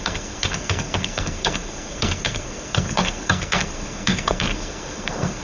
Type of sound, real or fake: fake